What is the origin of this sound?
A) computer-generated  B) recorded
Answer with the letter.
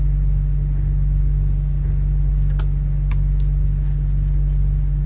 B